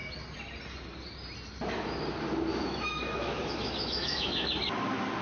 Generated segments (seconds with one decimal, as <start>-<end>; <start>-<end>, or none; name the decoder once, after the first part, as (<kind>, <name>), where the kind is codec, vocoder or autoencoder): 2.5-4.5 (autoencoder, DAC-VAE)